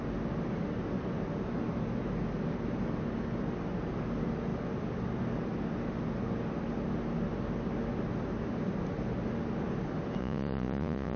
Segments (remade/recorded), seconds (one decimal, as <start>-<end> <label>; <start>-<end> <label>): 0.0-10.2 recorded; 10.2-11.2 remade